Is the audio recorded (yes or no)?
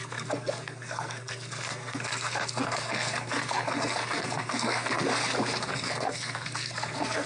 no